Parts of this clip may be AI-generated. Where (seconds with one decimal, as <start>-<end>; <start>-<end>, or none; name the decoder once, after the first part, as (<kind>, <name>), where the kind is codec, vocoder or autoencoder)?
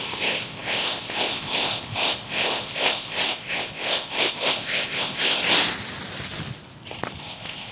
0.0-5.4 (codec, ZipCodec); 7.2-7.7